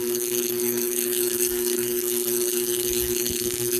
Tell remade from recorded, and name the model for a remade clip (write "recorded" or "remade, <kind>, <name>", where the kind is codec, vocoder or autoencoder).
remade, codec, SNAC